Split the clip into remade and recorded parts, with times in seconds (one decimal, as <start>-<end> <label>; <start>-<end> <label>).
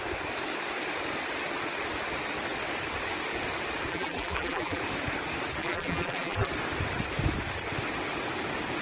0.0-3.9 recorded; 3.9-4.8 remade; 4.8-5.6 recorded; 5.6-6.5 remade; 6.5-8.8 recorded